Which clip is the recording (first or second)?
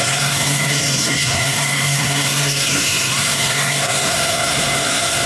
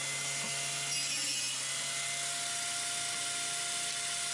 second